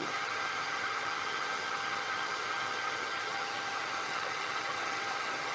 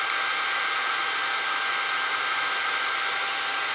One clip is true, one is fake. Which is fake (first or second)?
first